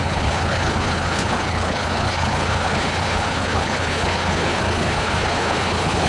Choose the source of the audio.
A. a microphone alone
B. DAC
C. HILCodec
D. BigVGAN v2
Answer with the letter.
C